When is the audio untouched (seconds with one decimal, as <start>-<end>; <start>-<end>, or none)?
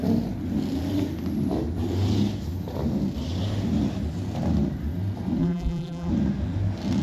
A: 0.0-5.4; 6.1-7.0